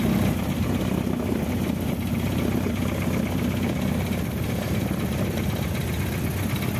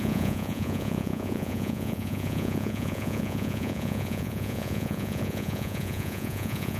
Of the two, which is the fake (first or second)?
second